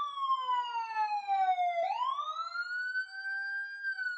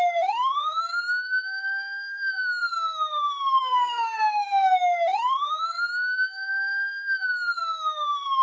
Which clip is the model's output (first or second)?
second